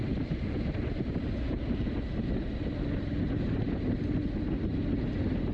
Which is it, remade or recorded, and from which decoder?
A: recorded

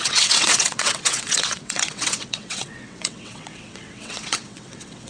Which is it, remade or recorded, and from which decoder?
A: remade, vocoder, WaveNeXt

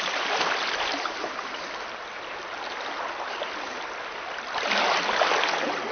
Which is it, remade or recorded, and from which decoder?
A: recorded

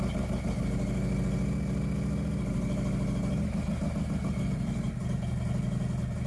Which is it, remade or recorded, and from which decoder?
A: recorded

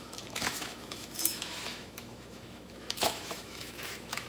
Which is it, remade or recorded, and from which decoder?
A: remade, autoencoder, DAC-VAE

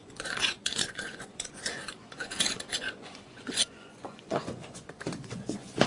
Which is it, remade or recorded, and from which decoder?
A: remade, vocoder, Vocos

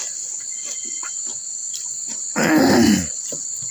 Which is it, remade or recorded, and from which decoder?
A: recorded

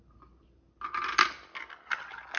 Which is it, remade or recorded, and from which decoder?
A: recorded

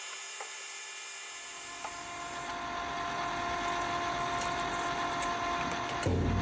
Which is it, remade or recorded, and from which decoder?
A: recorded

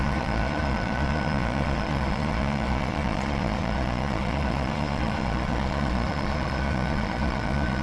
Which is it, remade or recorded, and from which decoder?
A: remade, vocoder, Vocos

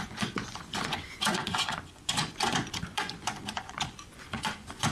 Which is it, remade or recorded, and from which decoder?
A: remade, vocoder, Vocos